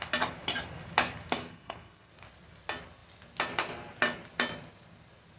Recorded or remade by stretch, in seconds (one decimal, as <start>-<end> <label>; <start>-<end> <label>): 0.0-1.4 recorded; 1.4-2.1 remade; 2.1-5.4 recorded